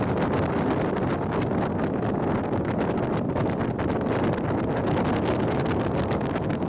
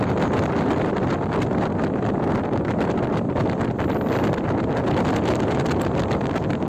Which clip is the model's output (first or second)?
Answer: second